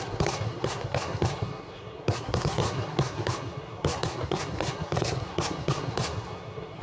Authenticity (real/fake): fake